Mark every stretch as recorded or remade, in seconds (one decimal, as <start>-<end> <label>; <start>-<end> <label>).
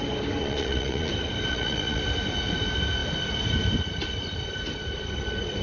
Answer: 0.0-0.4 recorded; 0.4-1.1 remade; 1.1-1.5 recorded; 1.5-2.0 remade; 2.0-5.6 recorded